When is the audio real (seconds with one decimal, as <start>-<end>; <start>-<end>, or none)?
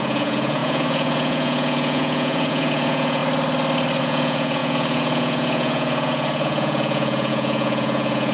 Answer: 3.2-4.0